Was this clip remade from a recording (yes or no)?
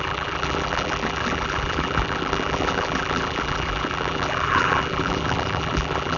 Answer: yes